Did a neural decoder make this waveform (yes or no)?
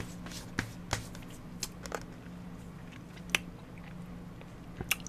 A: no